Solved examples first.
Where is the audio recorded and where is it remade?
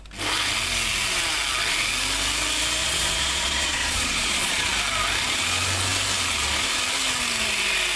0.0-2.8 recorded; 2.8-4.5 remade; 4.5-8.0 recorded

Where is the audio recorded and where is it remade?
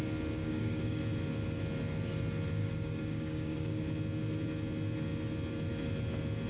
0.0-0.4 recorded; 0.4-1.0 remade; 1.0-2.6 recorded; 2.6-3.8 remade; 3.8-6.5 recorded